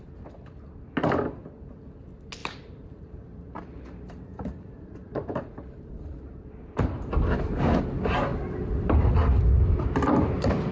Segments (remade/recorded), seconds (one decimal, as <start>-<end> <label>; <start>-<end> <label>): 0.0-2.4 recorded; 2.4-6.8 remade; 6.8-10.7 recorded

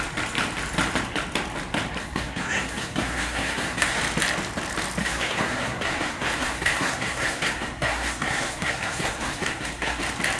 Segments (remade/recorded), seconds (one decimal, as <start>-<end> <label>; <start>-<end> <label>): 0.0-2.0 recorded; 2.0-4.0 remade; 4.0-5.0 recorded; 5.0-10.0 remade; 10.0-10.4 recorded

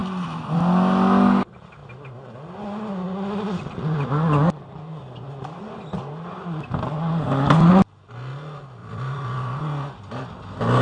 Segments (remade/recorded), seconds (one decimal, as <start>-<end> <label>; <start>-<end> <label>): 0.0-0.6 remade; 0.6-8.8 recorded; 8.8-9.6 remade; 9.6-10.8 recorded

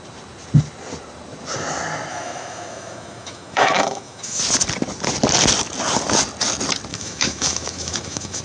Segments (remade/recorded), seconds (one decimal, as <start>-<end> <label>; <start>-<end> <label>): 0.0-2.1 recorded; 2.1-4.4 remade; 4.4-6.9 recorded; 6.9-8.4 remade

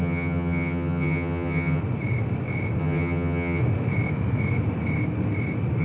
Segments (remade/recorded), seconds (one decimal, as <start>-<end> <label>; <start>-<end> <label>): 0.0-1.8 remade; 1.8-2.8 recorded; 2.8-3.6 remade; 3.6-5.8 recorded

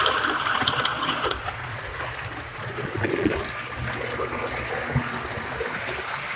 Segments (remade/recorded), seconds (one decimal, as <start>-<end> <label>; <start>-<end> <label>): 0.0-0.9 recorded; 0.9-1.9 remade; 1.9-2.5 recorded; 2.5-3.4 remade; 3.4-6.4 recorded

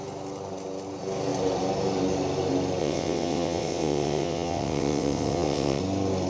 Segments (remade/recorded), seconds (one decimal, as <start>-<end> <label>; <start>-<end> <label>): 0.0-2.8 recorded; 2.8-5.8 remade; 5.8-6.3 recorded

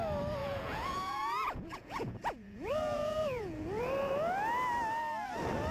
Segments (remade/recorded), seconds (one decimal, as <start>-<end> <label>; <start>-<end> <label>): 0.0-0.4 recorded; 0.4-3.8 remade; 3.8-5.7 recorded